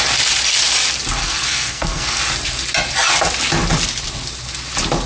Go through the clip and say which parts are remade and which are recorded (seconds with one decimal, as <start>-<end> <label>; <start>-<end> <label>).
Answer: 0.0-1.2 recorded; 1.2-2.2 remade; 2.2-5.1 recorded